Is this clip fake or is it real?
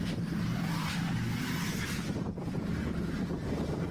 real